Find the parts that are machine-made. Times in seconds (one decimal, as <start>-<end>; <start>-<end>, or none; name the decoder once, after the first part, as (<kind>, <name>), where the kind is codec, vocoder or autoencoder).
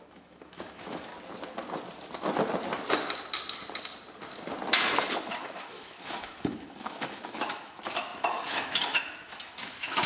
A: 0.0-1.1 (autoencoder, DAC-VAE); 5.4-10.1